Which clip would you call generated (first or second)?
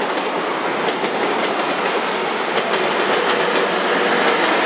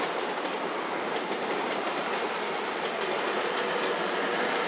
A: second